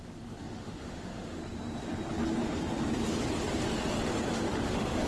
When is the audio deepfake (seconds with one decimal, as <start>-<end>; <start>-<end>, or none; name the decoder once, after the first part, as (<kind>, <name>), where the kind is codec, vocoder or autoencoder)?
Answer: 0.0-1.4 (autoencoder, DAC-VAE); 4.5-5.1

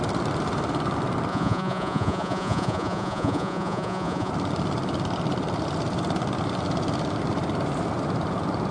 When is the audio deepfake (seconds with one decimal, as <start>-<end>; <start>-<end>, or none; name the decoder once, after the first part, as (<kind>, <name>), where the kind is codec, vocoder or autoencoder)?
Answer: 1.3-4.3 (vocoder, Vocos)

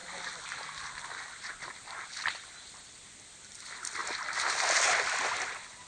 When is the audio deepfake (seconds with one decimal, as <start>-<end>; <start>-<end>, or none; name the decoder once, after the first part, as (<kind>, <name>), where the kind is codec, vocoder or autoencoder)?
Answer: none

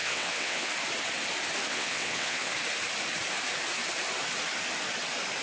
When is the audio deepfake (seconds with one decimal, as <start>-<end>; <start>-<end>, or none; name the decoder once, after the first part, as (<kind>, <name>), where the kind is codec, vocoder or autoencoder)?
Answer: 0.0-0.7 (vocoder, WaveNeXt); 1.7-2.5

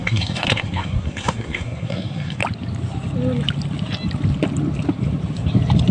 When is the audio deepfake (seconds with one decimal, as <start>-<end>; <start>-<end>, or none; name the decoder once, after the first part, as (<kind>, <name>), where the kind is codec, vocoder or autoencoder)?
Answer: 0.0-2.4 (codec, SNAC)

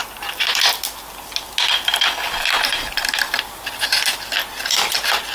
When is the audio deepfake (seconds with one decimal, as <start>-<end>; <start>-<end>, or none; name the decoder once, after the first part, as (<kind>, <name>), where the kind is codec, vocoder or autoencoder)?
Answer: none

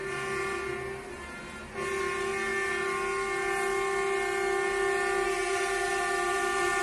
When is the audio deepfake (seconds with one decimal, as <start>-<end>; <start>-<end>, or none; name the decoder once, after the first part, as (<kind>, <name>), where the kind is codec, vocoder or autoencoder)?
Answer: none